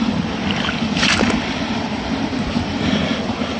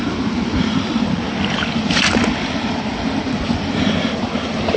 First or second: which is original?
second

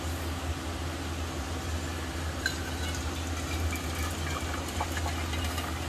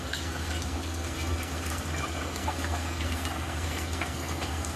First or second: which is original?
first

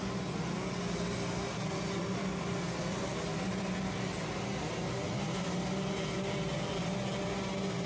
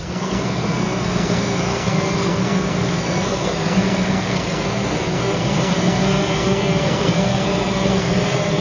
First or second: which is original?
first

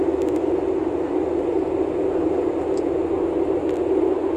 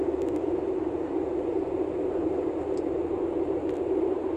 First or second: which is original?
first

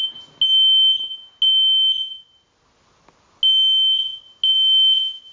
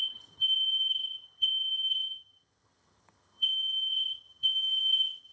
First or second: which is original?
first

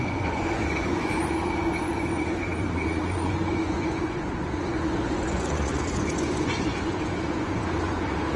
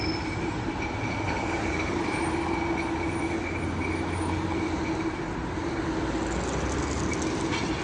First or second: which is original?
second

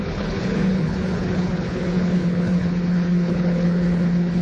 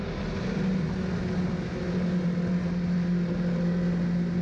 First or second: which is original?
second